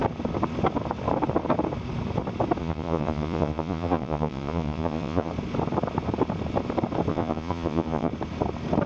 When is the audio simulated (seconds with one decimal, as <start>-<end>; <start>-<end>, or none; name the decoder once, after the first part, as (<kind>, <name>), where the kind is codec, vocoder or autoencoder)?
2.6-5.3 (vocoder, Vocos); 7.1-8.1